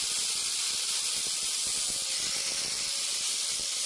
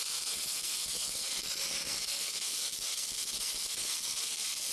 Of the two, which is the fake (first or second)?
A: second